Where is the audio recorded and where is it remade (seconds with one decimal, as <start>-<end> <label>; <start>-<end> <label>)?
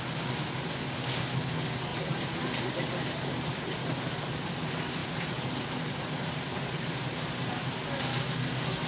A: 0.0-1.9 recorded; 1.9-4.5 remade; 4.5-5.0 recorded; 5.0-7.8 remade; 7.8-8.9 recorded